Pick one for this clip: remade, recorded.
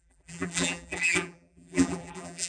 remade